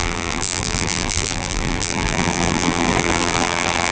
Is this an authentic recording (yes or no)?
no